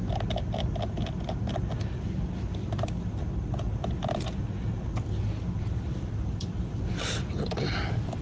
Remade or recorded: recorded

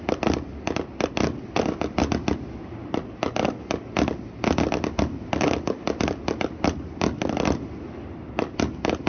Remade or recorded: recorded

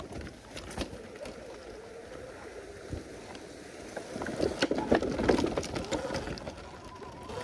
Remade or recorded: recorded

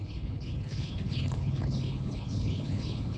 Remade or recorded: remade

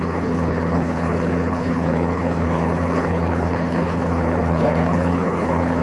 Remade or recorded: remade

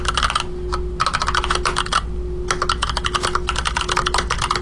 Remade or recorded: recorded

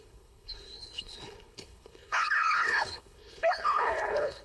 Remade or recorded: remade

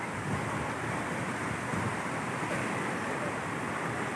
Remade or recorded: recorded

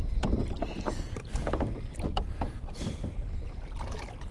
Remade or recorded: recorded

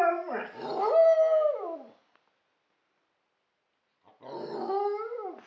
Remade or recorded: recorded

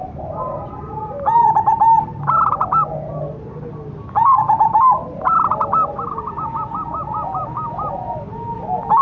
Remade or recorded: recorded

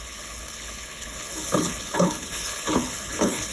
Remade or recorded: remade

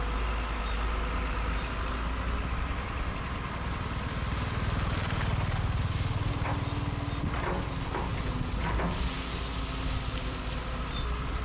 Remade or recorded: recorded